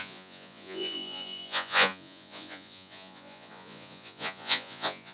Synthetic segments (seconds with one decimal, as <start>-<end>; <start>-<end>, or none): 0.0-5.1

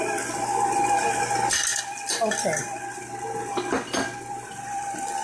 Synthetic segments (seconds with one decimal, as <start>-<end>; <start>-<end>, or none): none

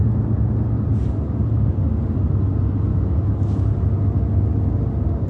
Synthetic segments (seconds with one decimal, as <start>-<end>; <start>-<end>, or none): 2.9-3.7

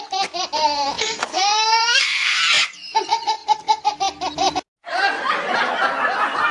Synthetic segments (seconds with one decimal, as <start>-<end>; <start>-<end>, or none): 1.2-2.4

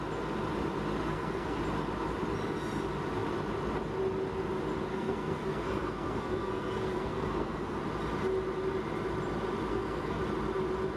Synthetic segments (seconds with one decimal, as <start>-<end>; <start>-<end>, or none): 1.1-1.6; 4.9-7.8; 9.7-10.2

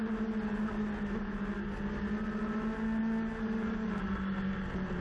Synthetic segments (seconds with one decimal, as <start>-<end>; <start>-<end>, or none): none